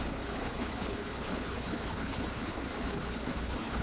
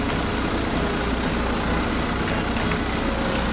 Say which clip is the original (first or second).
second